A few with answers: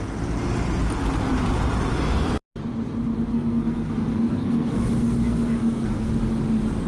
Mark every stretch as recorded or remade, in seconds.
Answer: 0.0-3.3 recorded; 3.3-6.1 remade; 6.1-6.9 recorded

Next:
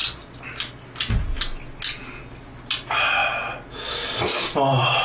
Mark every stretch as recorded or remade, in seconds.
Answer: 0.0-5.0 recorded

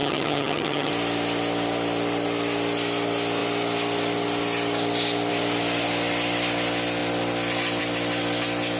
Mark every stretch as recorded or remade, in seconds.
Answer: 0.0-0.9 remade; 0.9-8.8 recorded

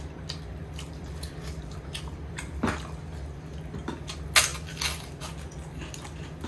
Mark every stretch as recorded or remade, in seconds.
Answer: 0.0-0.5 recorded; 0.5-2.7 remade; 2.7-6.5 recorded

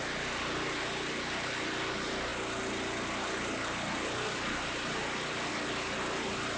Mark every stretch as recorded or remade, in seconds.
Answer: 0.0-6.6 recorded

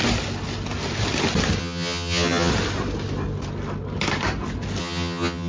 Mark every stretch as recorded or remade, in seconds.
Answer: 0.0-1.6 recorded; 1.6-2.5 remade; 2.5-4.8 recorded; 4.8-5.5 remade

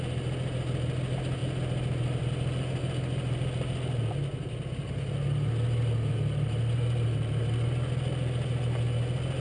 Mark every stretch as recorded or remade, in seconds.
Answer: 0.0-9.4 recorded